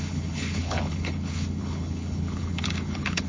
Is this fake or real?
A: fake